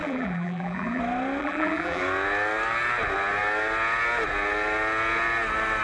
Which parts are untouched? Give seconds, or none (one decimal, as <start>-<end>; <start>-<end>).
1.0-1.4; 2.0-5.8